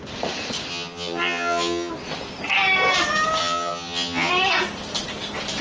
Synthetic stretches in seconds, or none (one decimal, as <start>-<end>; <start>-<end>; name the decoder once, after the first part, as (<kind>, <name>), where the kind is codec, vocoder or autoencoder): 0.7-1.9 (vocoder, HiFi-GAN); 3.4-4.3